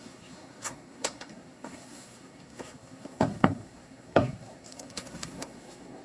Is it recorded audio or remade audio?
remade